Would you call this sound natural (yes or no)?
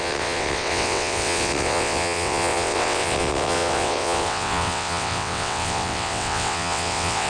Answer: no